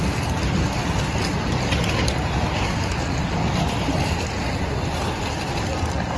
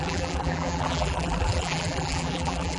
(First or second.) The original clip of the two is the first